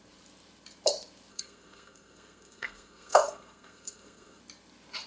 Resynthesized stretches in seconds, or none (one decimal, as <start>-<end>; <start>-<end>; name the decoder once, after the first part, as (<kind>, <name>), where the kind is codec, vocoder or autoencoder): 1.3-4.4 (codec, SNAC)